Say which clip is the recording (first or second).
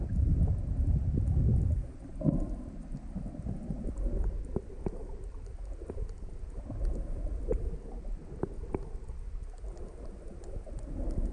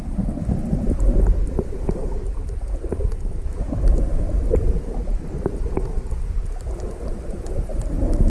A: first